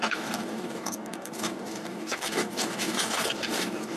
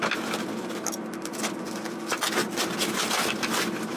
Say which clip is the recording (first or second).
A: second